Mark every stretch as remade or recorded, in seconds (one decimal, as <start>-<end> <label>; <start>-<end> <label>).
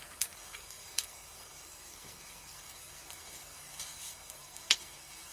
0.0-5.3 remade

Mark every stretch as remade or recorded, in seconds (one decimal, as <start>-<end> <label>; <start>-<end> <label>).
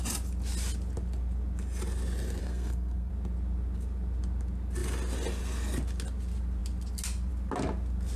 0.0-2.4 recorded; 2.4-3.1 remade; 3.1-8.2 recorded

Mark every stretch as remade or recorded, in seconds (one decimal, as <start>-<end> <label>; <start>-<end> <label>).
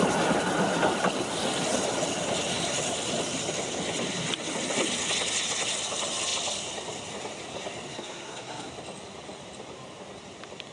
0.0-7.9 recorded; 7.9-8.7 remade; 8.7-10.7 recorded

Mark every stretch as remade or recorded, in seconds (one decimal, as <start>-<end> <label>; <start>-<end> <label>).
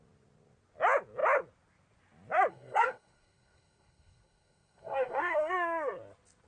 0.0-2.5 recorded; 2.5-5.5 remade; 5.5-6.5 recorded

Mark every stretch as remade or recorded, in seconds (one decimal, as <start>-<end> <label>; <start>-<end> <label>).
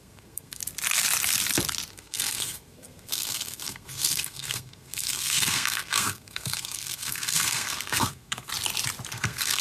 0.0-0.6 remade; 0.6-1.9 recorded; 1.9-8.5 remade; 8.5-9.1 recorded; 9.1-9.6 remade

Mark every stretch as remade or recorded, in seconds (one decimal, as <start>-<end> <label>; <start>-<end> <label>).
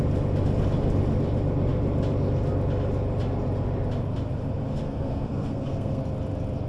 0.0-4.7 recorded; 4.7-6.0 remade; 6.0-6.7 recorded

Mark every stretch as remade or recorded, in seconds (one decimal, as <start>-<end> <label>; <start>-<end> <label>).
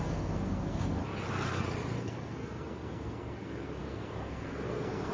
0.0-1.0 remade; 1.0-2.0 recorded; 2.0-5.1 remade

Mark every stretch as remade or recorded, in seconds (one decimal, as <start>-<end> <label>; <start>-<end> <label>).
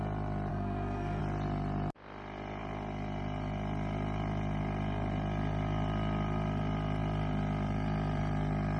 0.0-0.5 recorded; 0.5-1.2 remade; 1.2-8.8 recorded